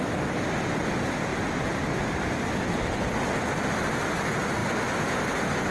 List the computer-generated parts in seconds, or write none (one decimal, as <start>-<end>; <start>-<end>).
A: none